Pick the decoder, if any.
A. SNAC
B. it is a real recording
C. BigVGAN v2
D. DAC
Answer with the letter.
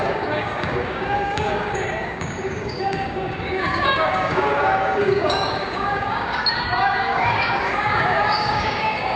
D